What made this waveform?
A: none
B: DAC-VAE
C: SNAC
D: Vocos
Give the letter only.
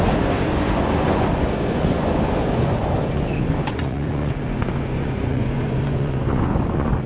D